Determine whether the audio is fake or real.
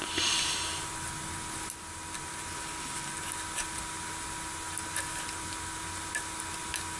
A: real